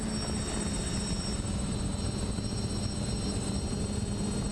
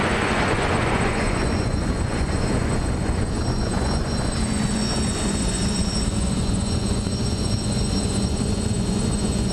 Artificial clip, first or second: second